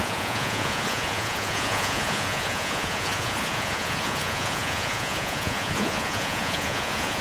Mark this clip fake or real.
fake